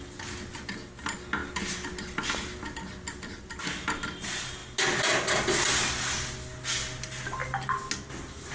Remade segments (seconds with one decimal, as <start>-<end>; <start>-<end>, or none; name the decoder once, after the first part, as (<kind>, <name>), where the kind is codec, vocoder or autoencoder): none